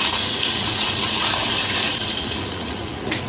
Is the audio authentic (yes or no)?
no